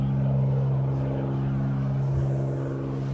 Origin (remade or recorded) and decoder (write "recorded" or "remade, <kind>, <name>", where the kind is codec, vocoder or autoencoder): recorded